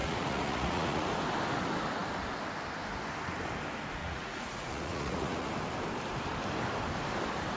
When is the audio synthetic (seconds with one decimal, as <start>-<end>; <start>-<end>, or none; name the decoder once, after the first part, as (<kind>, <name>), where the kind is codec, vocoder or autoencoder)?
0.0-1.1 (vocoder, Vocos); 4.0-5.5